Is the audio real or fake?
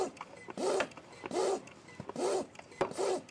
real